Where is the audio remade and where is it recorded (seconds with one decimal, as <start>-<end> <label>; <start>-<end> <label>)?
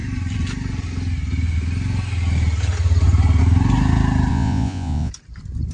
0.0-4.3 recorded; 4.3-5.1 remade; 5.1-5.7 recorded